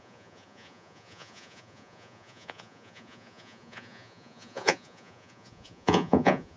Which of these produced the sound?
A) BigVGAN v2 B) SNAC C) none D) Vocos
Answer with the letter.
D